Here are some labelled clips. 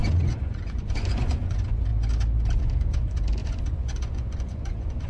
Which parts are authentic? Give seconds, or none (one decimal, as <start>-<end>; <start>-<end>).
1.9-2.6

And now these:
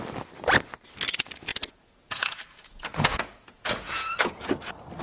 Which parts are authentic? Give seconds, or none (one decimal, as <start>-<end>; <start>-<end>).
0.0-1.5; 4.5-5.0

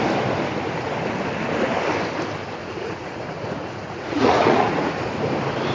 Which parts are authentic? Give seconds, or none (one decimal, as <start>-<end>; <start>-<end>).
0.0-2.6; 4.9-5.7

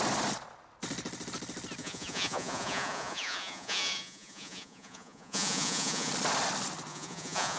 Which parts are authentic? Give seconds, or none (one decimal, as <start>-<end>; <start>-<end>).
0.0-1.8; 6.1-6.9